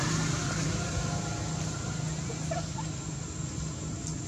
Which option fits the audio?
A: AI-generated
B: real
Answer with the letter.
B